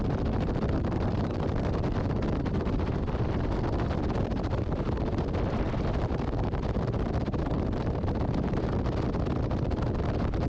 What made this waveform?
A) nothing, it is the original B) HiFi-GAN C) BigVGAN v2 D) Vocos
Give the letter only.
C